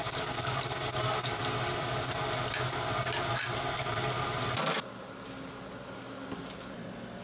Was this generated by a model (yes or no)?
no